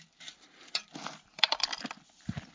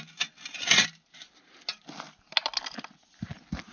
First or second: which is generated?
first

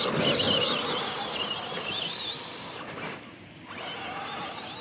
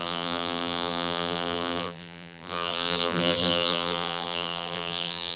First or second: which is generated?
second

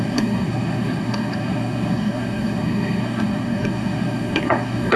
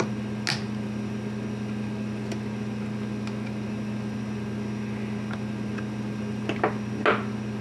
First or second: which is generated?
first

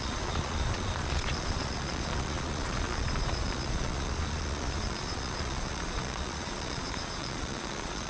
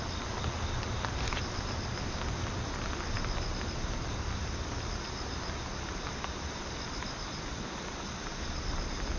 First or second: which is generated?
first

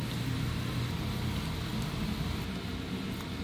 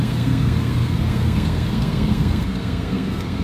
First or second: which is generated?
second